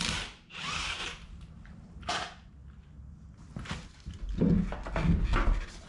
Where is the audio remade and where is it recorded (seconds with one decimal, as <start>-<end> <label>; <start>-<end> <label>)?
0.0-2.6 remade; 2.6-5.9 recorded